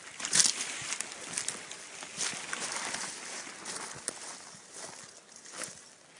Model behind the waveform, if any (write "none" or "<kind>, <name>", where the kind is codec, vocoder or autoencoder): none